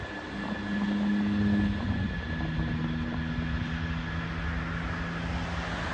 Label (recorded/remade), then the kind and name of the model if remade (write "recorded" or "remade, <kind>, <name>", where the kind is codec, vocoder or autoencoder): recorded